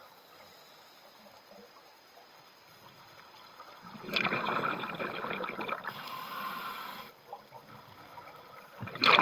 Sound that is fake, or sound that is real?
real